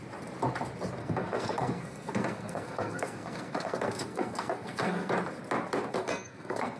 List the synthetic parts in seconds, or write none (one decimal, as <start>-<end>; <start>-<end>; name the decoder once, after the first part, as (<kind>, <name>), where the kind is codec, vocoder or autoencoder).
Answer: 1.0-5.1 (codec, SNAC); 5.9-6.8